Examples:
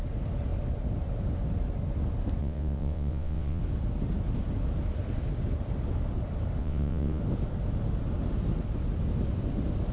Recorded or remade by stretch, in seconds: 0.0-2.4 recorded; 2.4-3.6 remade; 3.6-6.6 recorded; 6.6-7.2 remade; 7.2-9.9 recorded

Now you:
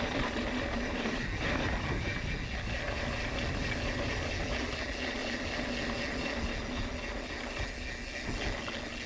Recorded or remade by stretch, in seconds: 0.0-9.1 recorded

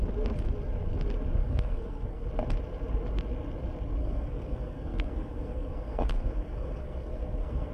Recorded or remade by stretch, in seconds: 0.0-1.4 recorded; 1.4-2.3 remade; 2.3-4.0 recorded; 4.0-7.7 remade

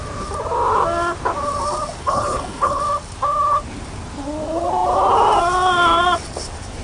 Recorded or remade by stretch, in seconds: 0.0-2.0 recorded; 2.0-2.8 remade; 2.8-6.8 recorded

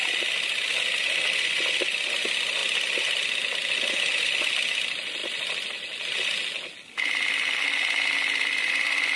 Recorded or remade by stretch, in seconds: 0.0-9.2 recorded